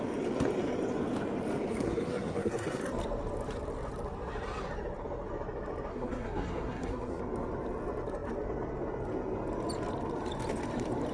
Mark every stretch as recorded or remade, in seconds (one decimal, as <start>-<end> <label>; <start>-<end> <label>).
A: 0.0-1.7 recorded; 1.7-2.8 remade; 2.8-5.9 recorded; 5.9-7.2 remade; 7.2-11.1 recorded